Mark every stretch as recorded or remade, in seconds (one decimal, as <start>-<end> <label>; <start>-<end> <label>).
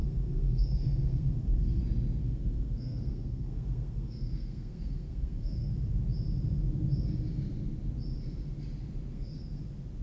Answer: 0.0-1.8 remade; 1.8-2.2 recorded; 2.2-5.7 remade; 5.7-9.1 recorded; 9.1-9.6 remade; 9.6-10.0 recorded